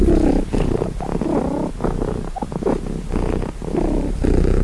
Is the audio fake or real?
real